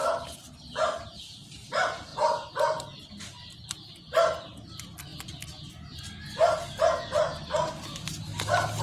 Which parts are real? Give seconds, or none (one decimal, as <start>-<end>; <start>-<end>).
0.0-8.8